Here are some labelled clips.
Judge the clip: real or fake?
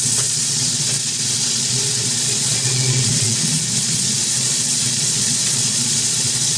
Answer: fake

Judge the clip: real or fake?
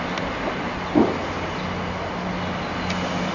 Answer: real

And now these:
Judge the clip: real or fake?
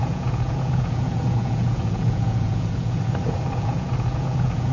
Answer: fake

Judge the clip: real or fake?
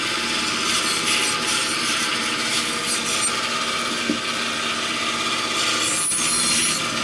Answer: real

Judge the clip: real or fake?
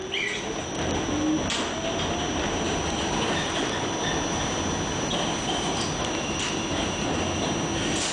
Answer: real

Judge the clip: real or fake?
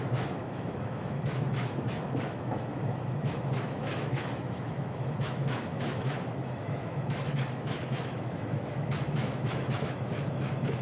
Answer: fake